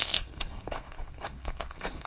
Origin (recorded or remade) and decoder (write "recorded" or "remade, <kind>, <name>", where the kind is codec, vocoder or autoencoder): remade, codec, SNAC